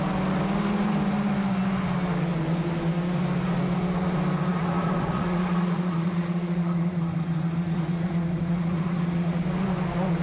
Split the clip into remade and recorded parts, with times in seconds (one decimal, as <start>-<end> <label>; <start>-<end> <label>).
0.0-4.5 recorded; 4.5-9.4 remade; 9.4-10.2 recorded